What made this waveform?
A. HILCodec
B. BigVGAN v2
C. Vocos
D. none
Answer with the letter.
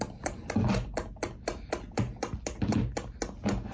D